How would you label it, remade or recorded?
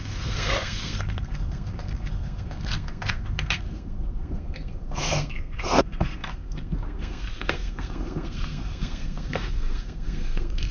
remade